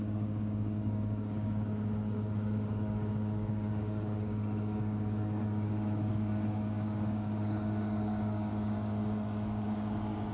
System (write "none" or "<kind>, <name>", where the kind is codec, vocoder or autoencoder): codec, DAC